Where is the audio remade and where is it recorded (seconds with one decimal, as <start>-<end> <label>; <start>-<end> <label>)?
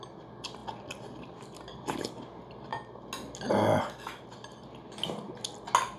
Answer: 0.0-6.0 recorded